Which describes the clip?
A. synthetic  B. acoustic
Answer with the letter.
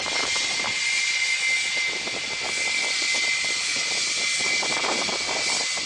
B